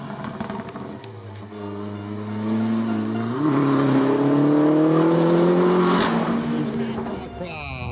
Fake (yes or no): no